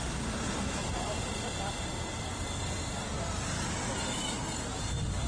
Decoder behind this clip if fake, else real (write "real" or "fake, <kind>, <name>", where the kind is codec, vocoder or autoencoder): real